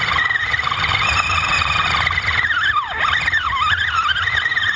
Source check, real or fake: real